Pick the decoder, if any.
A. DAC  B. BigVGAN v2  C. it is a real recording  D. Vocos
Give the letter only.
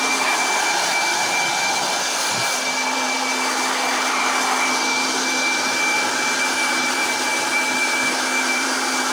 B